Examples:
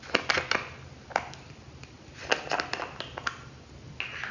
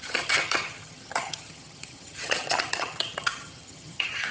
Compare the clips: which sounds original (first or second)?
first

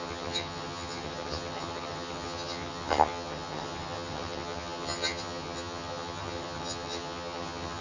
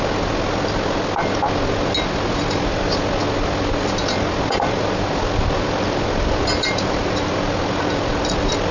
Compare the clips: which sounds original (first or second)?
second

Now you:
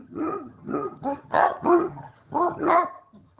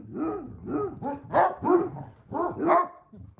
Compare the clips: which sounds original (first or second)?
second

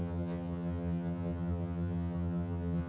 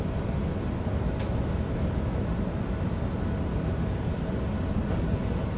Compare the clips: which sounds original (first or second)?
second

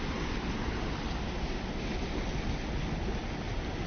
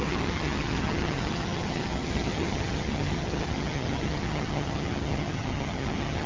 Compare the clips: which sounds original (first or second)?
first